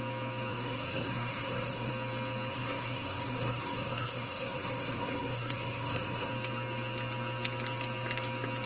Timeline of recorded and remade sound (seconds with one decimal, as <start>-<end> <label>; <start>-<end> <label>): 0.0-0.5 recorded; 0.5-1.9 remade; 1.9-2.5 recorded; 2.5-6.3 remade; 6.3-8.7 recorded